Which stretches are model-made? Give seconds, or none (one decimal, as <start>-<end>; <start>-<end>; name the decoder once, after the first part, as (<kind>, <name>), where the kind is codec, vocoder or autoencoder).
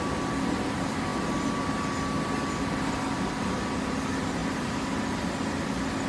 none